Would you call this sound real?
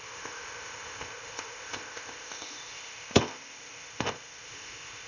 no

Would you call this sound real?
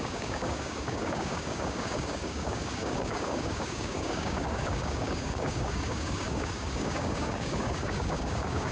no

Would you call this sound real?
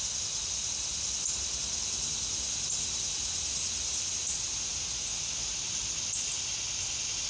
yes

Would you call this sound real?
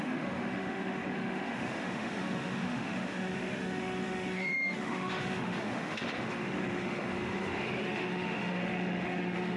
no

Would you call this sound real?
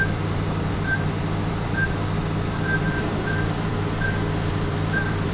no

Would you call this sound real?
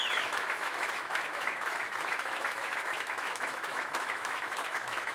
no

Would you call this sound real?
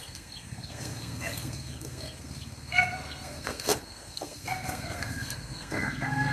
no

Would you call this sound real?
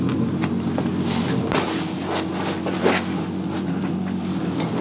yes